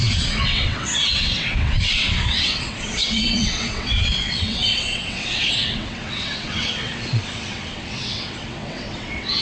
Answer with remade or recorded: remade